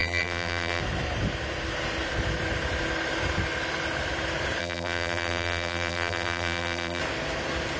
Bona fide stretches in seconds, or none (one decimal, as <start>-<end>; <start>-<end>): 0.8-4.6; 7.0-7.8